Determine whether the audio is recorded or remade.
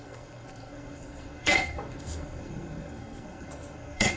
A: remade